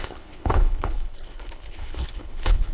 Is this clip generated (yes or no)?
yes